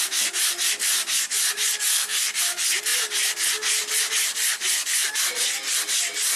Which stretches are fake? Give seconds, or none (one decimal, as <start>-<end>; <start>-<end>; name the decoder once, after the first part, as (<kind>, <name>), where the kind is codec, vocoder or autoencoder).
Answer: 1.9-2.4 (codec, SNAC)